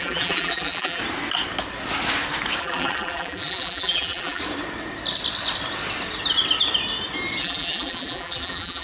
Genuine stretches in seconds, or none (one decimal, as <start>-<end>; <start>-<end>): 1.0-2.6; 4.4-7.4